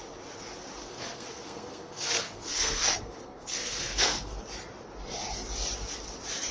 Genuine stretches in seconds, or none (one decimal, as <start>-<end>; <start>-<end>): 0.0-0.8; 4.4-6.5